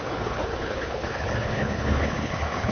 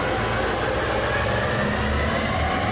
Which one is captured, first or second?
second